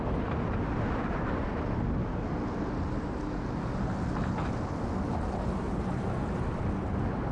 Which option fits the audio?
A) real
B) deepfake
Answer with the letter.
A